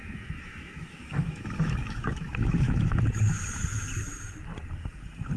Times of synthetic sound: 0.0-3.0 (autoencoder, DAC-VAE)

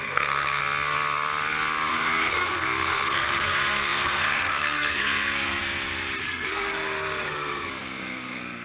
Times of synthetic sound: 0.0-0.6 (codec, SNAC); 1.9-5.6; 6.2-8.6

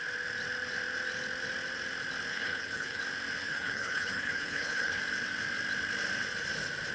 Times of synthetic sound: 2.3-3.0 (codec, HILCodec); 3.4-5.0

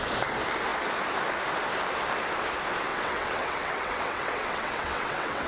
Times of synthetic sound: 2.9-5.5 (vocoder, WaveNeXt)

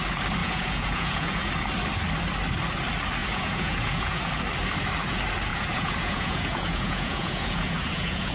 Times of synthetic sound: 0.4-1.5 (vocoder, Vocos); 3.2-4.3; 5.5-8.3